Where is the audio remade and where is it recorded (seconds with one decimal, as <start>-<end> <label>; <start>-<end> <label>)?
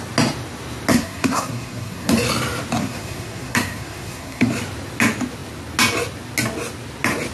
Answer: 0.0-0.9 recorded; 0.9-2.1 remade; 2.1-2.8 recorded; 2.8-4.5 remade; 4.5-7.3 recorded